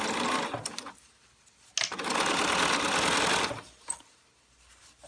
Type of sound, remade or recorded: recorded